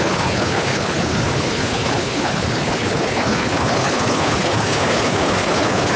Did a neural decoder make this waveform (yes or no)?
yes